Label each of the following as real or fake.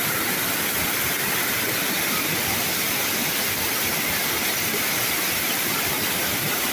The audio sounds fake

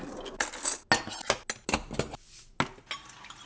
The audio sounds real